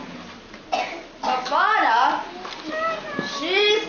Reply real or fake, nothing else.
real